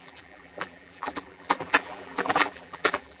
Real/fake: fake